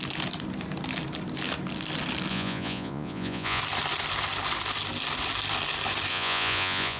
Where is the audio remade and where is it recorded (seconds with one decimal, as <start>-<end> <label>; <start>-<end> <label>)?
0.0-2.3 recorded; 2.3-3.6 remade; 3.6-6.1 recorded; 6.1-7.0 remade